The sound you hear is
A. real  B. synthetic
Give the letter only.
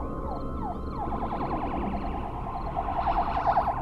A